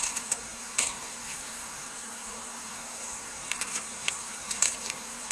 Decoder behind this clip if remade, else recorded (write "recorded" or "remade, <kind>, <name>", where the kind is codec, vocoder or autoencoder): remade, codec, SNAC